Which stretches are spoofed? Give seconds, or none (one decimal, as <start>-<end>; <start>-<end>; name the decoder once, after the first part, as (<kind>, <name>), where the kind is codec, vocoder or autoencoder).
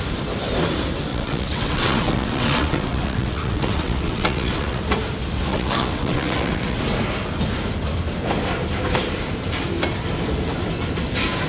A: 1.1-4.8 (vocoder, WaveNeXt); 5.5-6.8